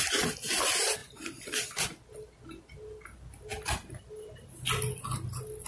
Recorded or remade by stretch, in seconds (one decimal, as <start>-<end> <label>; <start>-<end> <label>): 0.0-1.0 recorded; 1.0-1.7 remade; 1.7-5.7 recorded